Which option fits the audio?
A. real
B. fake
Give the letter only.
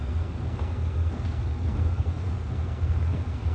B